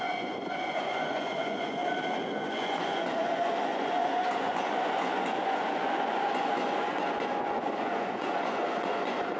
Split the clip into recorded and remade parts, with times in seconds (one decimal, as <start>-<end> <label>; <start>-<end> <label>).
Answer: 0.0-1.8 remade; 1.8-2.3 recorded; 2.3-9.4 remade